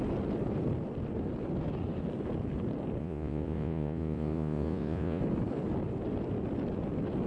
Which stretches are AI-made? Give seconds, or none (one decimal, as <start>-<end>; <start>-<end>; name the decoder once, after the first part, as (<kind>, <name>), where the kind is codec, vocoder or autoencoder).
3.0-5.2 (vocoder, Vocos)